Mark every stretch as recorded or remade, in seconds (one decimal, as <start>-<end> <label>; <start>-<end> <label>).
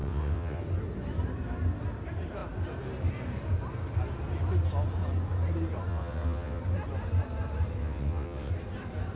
0.0-0.6 remade; 0.6-5.9 recorded; 5.9-6.6 remade; 6.6-7.8 recorded; 7.8-8.5 remade; 8.5-9.2 recorded